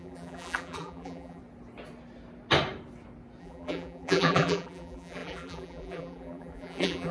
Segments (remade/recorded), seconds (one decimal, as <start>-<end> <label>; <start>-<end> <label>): 0.0-1.4 remade; 1.4-3.4 recorded; 3.4-7.1 remade